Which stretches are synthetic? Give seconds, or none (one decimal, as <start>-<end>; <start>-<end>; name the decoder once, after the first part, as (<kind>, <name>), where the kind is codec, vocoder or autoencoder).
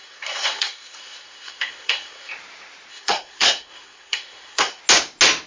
0.0-2.3 (codec, SNAC); 2.9-4.8